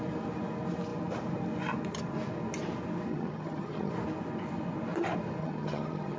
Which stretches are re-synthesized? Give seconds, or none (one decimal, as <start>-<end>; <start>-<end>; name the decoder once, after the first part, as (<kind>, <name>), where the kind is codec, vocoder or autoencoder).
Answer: 3.1-3.9 (vocoder, HiFi-GAN); 5.4-6.2